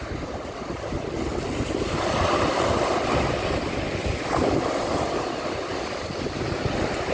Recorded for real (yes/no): yes